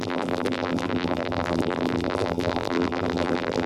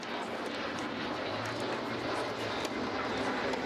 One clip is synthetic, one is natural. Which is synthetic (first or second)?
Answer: first